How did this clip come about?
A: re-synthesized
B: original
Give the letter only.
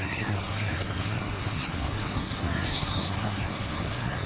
A